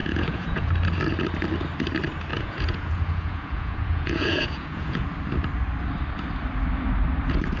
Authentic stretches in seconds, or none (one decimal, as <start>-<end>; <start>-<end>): 0.7-2.3; 5.1-7.6